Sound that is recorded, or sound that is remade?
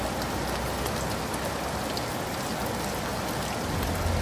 recorded